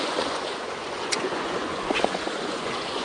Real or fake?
fake